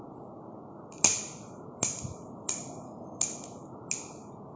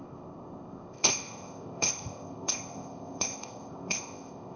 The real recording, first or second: first